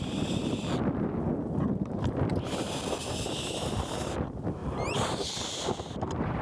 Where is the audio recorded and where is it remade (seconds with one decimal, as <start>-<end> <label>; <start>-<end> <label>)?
0.0-4.6 recorded; 4.6-6.4 remade